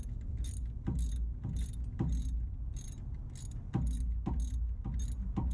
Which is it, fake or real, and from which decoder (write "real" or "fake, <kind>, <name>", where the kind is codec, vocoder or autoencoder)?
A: real